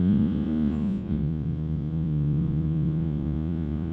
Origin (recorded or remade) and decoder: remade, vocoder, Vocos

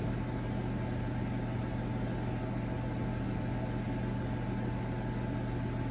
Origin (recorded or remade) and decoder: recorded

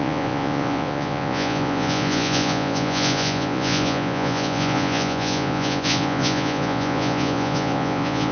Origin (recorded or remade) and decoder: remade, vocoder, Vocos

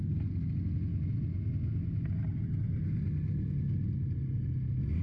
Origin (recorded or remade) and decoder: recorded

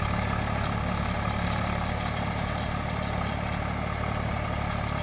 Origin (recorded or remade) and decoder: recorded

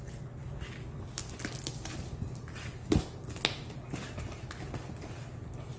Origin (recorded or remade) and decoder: recorded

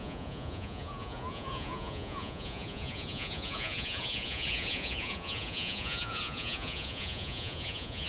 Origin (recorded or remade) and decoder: remade, vocoder, Vocos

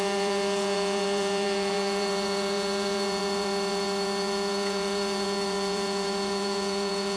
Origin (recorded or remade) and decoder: remade, vocoder, Vocos